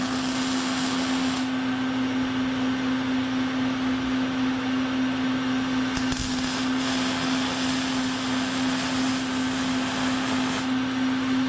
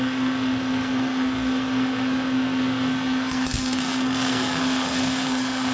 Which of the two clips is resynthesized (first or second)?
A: second